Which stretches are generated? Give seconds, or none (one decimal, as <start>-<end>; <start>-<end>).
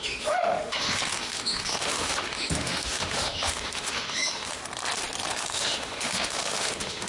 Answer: 0.0-4.6; 5.3-7.1